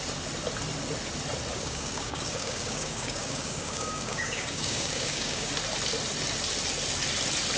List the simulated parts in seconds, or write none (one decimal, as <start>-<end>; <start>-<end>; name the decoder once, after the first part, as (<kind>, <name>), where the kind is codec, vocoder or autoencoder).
1.5-5.5 (codec, DAC)